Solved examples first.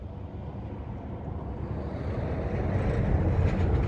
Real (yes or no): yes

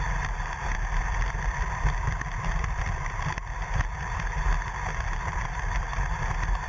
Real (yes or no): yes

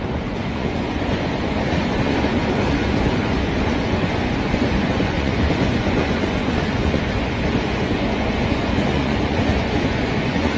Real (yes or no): no